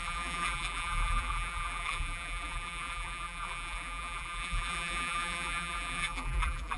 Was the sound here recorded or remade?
remade